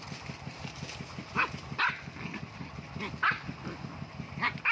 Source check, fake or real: real